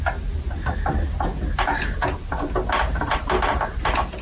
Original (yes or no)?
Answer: yes